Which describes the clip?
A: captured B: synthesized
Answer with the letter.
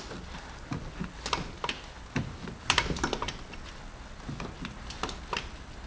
A